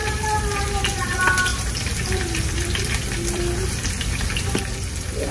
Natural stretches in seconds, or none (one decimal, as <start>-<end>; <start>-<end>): 0.8-1.5; 4.7-5.3